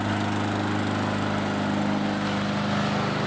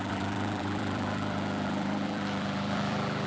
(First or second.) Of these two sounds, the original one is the first